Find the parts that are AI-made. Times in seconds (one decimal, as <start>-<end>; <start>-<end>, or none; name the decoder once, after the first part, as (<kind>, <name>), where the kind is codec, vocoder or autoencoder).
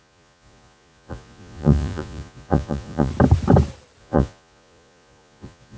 0.0-3.1 (vocoder, Vocos); 4.0-5.8